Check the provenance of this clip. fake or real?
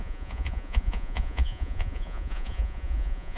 fake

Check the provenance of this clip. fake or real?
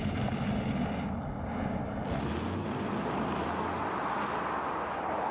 real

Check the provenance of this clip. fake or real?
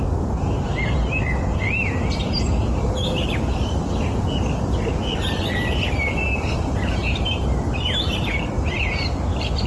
real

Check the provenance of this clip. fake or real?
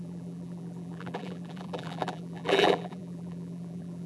fake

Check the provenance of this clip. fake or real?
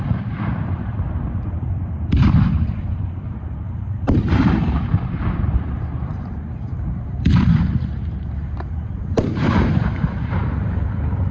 fake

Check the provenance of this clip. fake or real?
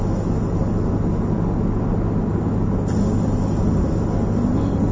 real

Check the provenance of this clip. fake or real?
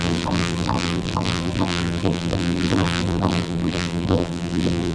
fake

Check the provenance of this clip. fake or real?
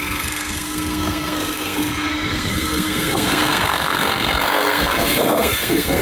fake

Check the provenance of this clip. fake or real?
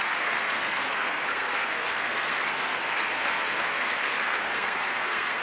fake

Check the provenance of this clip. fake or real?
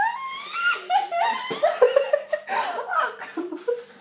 real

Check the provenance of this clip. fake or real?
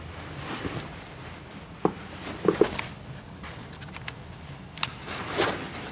real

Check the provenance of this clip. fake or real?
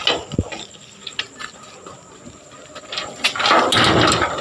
real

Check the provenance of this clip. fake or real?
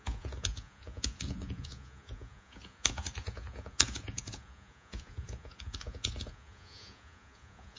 fake